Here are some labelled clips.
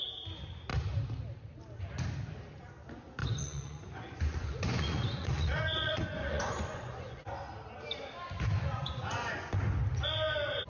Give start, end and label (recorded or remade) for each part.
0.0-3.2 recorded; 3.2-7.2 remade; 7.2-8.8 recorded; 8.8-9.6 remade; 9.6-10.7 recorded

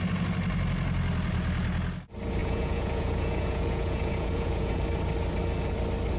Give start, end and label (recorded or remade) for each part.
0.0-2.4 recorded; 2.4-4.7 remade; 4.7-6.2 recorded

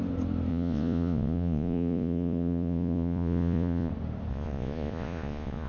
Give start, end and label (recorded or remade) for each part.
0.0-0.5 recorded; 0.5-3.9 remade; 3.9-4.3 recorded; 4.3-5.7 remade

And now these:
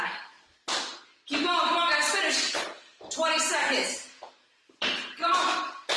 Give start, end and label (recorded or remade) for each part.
0.0-6.0 recorded

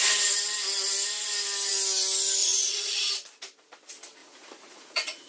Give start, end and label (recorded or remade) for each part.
0.0-2.4 recorded; 2.4-3.1 remade; 3.1-4.2 recorded; 4.2-5.3 remade

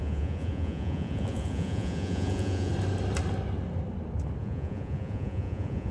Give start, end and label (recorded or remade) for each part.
0.0-2.7 remade; 2.7-4.4 recorded; 4.4-5.9 remade